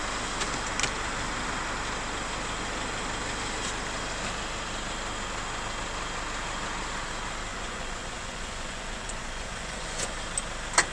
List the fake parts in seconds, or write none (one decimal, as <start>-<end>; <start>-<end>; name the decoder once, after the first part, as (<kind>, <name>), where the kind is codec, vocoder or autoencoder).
7.5-10.2 (vocoder, Vocos)